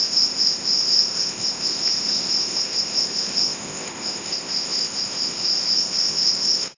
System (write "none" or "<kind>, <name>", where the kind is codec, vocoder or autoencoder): codec, ZipCodec